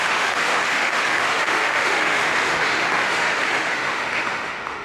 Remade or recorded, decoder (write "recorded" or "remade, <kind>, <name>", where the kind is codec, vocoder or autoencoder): remade, autoencoder, DAC-VAE